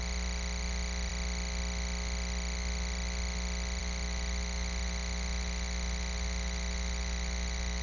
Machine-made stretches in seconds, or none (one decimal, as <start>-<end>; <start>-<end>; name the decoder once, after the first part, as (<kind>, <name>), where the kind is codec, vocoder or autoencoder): none